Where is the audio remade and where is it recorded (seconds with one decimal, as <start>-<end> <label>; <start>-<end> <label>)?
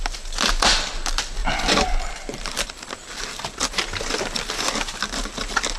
0.0-1.4 recorded; 1.4-3.2 remade; 3.2-5.8 recorded